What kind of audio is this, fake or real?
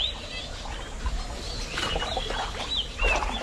real